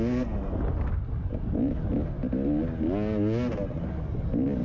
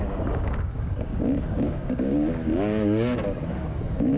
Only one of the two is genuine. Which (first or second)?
first